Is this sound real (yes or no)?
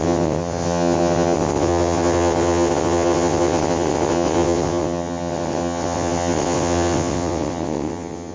no